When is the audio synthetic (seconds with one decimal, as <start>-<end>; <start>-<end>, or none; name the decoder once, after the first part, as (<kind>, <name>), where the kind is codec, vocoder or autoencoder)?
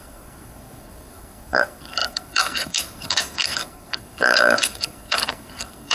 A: 0.0-5.9 (codec, SNAC)